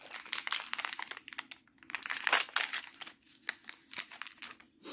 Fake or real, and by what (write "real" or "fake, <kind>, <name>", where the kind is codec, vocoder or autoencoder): real